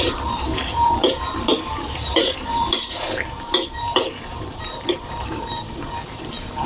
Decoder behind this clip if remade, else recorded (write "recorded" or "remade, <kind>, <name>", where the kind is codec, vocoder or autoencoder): remade, vocoder, BigVGAN v2